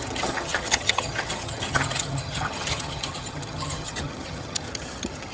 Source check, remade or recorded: remade